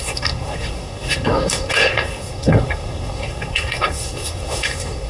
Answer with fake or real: fake